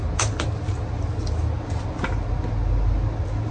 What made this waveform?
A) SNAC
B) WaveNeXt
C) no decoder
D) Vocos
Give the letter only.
C